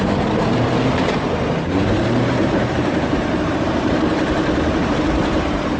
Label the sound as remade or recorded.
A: remade